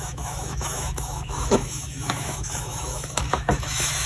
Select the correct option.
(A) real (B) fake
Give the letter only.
B